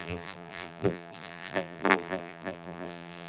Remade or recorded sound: remade